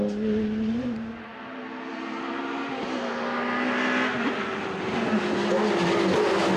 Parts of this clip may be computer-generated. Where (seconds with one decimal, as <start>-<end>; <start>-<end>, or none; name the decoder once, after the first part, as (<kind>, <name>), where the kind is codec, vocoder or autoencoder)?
1.3-2.4 (vocoder, BigVGAN v2)